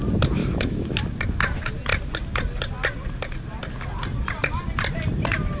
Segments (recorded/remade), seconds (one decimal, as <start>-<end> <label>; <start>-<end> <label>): 0.0-0.4 recorded; 0.4-1.0 remade; 1.0-5.6 recorded